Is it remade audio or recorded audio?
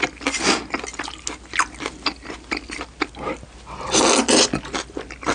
recorded